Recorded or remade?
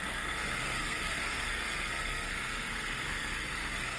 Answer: remade